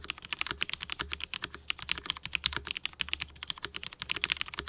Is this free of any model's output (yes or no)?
yes